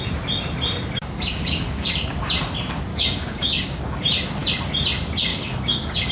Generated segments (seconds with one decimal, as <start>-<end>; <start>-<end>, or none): 1.3-1.9; 2.9-3.8; 5.3-6.1